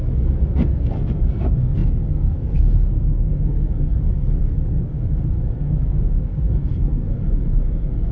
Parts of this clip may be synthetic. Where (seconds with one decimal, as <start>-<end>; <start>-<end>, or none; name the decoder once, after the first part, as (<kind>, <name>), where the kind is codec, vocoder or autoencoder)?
0.0-8.1 (codec, SNAC)